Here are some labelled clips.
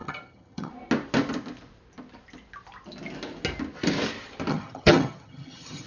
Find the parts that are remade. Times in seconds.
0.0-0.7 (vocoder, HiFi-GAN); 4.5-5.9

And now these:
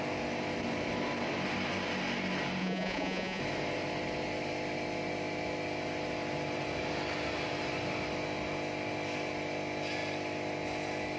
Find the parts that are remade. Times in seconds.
2.6-3.4 (vocoder, Vocos)

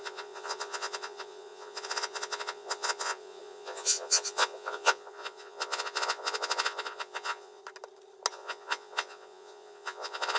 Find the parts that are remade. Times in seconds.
0.0-7.6 (vocoder, Vocos); 8.3-10.4